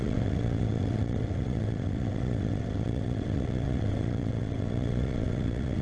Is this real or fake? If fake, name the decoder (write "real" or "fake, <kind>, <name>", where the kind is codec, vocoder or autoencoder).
fake, vocoder, WaveNeXt